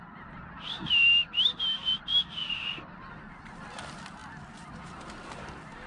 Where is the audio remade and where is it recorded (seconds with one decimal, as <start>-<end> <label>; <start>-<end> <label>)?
0.0-5.9 recorded